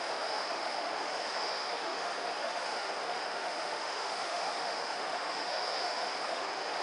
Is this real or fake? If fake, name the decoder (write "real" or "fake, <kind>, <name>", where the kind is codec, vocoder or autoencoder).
fake, autoencoder, DAC-VAE